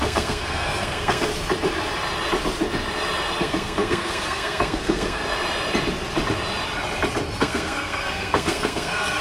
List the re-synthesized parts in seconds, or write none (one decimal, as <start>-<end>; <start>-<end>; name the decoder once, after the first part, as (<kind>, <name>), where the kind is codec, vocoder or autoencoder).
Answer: 0.0-1.3 (codec, SNAC); 3.4-5.2; 7.4-9.2